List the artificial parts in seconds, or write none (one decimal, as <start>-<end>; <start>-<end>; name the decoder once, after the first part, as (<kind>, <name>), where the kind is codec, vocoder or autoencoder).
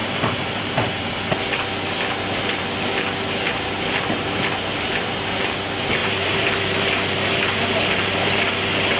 0.0-1.1 (vocoder, BigVGAN v2); 6.0-6.6